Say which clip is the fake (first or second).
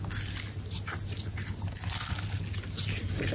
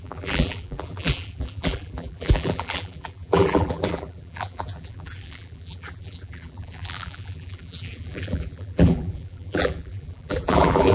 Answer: second